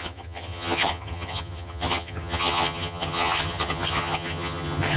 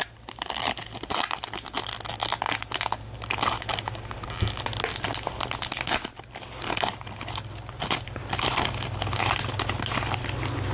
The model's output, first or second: first